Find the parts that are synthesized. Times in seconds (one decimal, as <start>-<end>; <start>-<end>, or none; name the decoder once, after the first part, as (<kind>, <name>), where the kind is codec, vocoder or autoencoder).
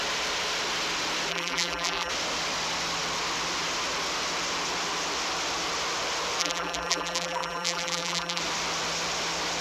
1.3-2.1 (vocoder, BigVGAN v2); 6.4-8.4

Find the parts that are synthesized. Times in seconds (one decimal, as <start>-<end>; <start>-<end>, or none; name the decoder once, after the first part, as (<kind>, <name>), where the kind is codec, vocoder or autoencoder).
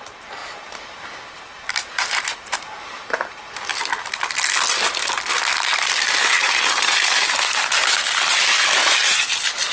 0.0-3.7 (vocoder, BigVGAN v2); 6.2-7.9